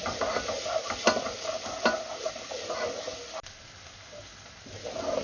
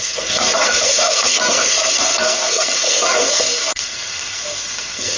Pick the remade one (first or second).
second